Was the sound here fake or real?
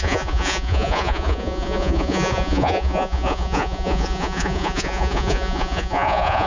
fake